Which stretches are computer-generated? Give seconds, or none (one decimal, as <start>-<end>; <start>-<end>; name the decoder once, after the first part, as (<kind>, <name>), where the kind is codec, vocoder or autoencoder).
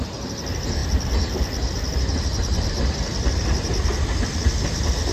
none